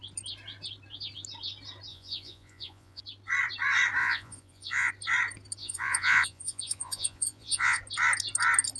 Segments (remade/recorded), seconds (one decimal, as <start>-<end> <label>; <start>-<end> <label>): 0.0-1.9 recorded; 1.9-3.0 remade; 3.0-4.0 recorded; 4.0-4.9 remade; 4.9-5.6 recorded; 5.6-7.8 remade; 7.8-8.8 recorded